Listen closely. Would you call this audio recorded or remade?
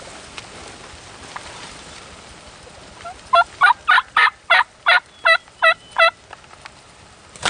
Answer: recorded